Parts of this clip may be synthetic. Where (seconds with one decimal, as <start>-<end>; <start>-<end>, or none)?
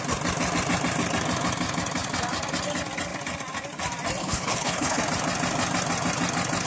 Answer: 4.2-5.0